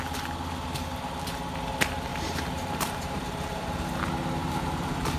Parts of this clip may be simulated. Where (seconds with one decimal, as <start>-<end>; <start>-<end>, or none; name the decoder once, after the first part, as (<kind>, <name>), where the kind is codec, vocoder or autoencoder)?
2.1-3.9 (vocoder, BigVGAN v2); 4.4-5.2